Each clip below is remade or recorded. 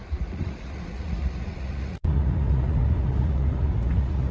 remade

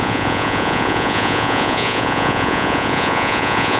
remade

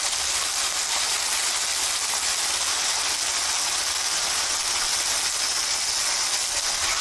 recorded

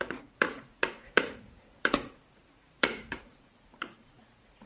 remade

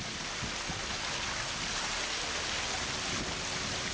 recorded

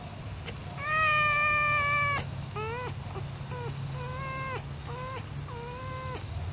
recorded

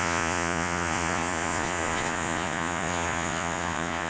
remade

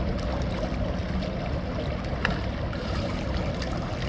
recorded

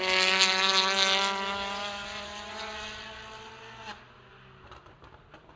recorded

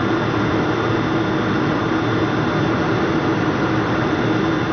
recorded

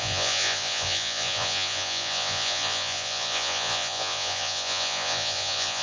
remade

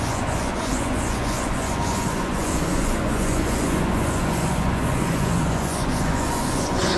remade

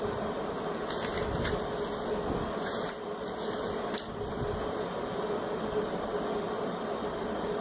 recorded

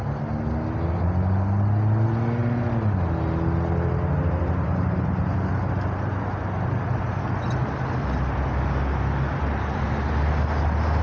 recorded